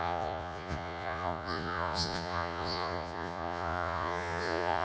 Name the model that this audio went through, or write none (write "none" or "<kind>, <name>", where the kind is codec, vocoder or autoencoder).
vocoder, Vocos